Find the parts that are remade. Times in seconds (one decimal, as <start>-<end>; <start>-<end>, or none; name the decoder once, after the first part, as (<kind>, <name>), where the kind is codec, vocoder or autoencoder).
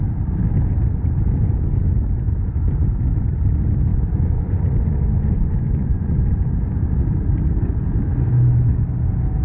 3.9-7.0 (vocoder, Vocos)